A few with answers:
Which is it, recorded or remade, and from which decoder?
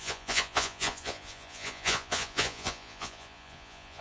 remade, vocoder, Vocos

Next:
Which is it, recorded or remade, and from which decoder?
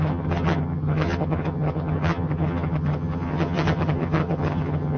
remade, vocoder, HiFi-GAN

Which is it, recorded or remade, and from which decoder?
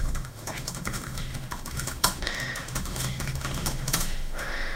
remade, autoencoder, DAC-VAE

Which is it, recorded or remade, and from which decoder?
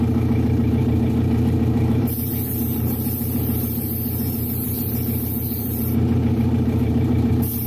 remade, vocoder, BigVGAN v2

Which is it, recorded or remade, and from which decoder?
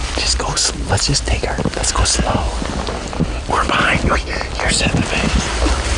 recorded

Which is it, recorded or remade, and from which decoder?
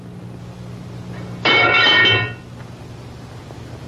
recorded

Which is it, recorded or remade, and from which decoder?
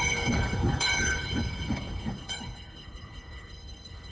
remade, codec, HILCodec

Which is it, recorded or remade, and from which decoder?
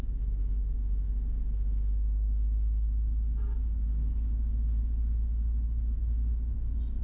recorded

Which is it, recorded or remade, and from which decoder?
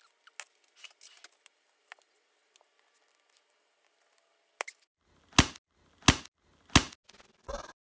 recorded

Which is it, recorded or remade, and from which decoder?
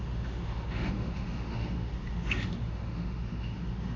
remade, autoencoder, DAC-VAE